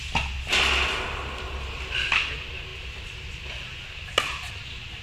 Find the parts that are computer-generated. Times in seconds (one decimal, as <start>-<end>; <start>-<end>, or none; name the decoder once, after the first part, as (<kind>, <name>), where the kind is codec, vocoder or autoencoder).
none